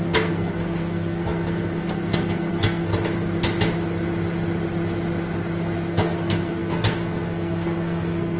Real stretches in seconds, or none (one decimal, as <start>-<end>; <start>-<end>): 2.9-5.9